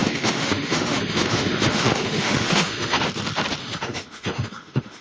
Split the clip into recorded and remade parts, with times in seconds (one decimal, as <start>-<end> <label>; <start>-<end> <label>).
0.0-3.0 remade; 3.0-3.6 recorded; 3.6-5.0 remade